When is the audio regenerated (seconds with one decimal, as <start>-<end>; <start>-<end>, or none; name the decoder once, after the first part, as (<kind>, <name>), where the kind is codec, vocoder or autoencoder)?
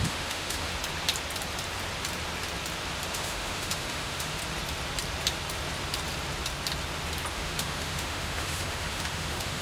0.0-0.7 (autoencoder, DAC-VAE); 3.1-4.4; 7.3-9.6